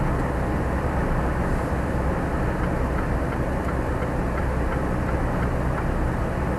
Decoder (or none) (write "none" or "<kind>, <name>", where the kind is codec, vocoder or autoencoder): none